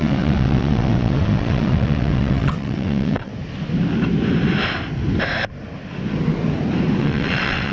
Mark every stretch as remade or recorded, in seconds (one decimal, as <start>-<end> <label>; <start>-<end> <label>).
0.0-3.3 remade; 3.3-7.0 recorded; 7.0-7.7 remade

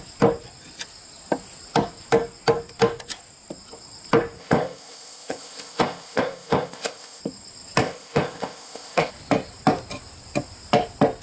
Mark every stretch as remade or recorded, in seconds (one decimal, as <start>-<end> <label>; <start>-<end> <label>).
0.0-4.4 recorded; 4.4-7.2 remade; 7.2-7.8 recorded; 7.8-9.1 remade; 9.1-11.2 recorded

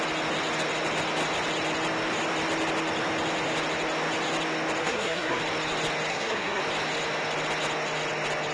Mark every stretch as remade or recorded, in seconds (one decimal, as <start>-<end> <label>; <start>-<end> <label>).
0.0-4.8 recorded; 4.8-5.4 remade; 5.4-6.1 recorded; 6.1-6.6 remade; 6.6-8.5 recorded

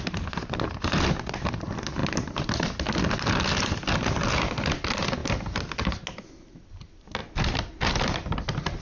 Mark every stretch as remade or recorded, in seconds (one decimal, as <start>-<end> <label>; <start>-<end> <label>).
0.0-8.8 recorded

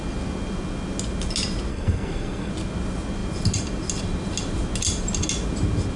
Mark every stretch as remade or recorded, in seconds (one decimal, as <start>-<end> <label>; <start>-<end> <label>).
0.0-1.7 recorded; 1.7-2.5 remade; 2.5-6.0 recorded

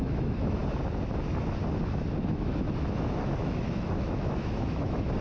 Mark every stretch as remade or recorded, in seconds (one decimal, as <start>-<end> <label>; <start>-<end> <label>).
0.0-0.6 remade; 0.6-2.2 recorded; 2.2-5.2 remade

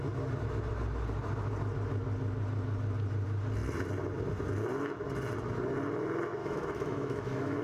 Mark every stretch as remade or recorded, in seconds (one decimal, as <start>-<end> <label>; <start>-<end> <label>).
0.0-6.4 recorded; 6.4-7.6 remade